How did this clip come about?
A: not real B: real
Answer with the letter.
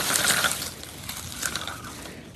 B